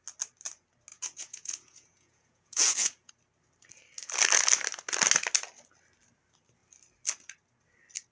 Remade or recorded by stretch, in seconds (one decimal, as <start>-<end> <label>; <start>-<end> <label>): 0.0-0.9 recorded; 0.9-3.1 remade; 3.1-8.1 recorded